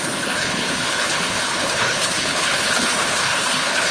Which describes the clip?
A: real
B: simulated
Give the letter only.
B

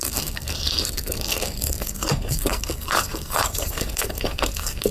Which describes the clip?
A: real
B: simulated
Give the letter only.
B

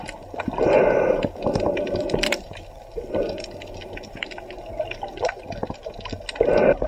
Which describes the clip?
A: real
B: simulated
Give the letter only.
A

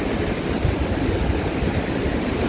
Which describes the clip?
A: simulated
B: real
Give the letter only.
B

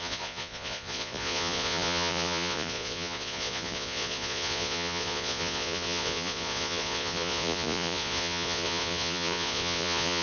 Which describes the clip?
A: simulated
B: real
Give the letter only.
A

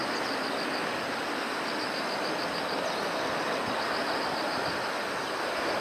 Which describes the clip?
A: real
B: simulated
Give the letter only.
A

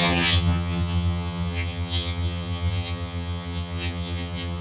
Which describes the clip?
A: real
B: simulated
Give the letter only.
B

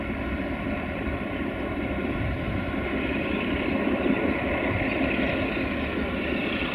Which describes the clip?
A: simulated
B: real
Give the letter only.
A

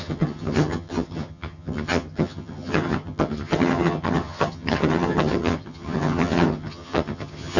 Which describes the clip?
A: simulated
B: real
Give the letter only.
A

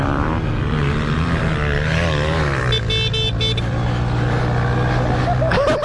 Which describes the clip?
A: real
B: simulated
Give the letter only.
A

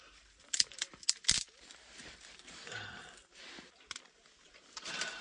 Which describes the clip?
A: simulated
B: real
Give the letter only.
B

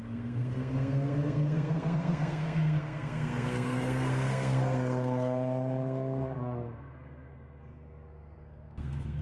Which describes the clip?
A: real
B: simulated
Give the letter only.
B